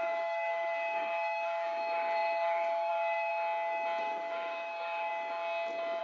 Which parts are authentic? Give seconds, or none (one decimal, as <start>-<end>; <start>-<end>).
3.3-4.0; 5.1-6.0